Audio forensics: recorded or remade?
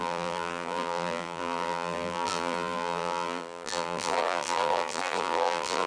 remade